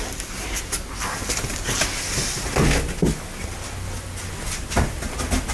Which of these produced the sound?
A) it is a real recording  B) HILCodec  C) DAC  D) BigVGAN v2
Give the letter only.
A